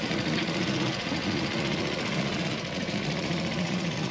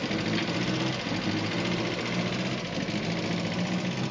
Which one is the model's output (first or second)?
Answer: first